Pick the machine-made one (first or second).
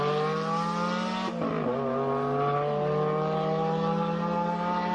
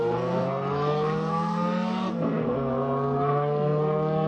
second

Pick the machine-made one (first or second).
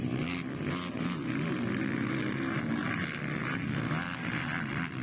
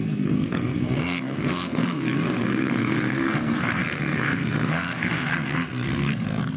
second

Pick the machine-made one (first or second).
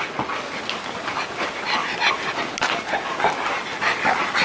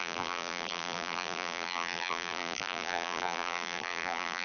second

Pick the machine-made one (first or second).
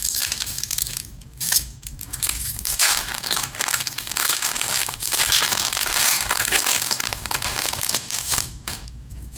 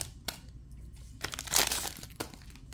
first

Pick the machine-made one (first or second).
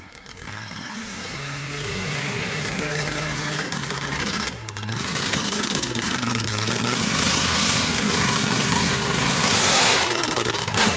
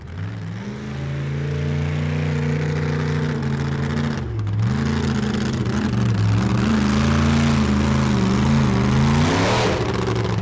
first